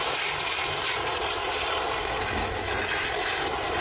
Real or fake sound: real